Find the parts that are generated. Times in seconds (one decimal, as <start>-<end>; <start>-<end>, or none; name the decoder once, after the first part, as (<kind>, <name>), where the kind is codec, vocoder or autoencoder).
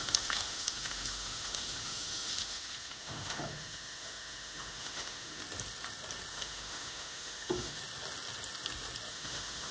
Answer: 0.0-5.4 (autoencoder, DAC-VAE); 6.3-7.8; 9.1-9.7